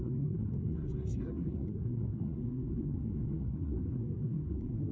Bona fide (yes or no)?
no